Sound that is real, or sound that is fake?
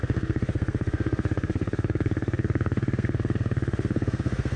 fake